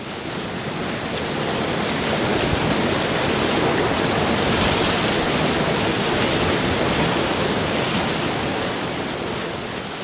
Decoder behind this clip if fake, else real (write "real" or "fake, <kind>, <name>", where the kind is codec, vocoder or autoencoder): real